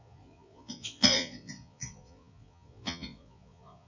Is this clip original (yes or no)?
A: no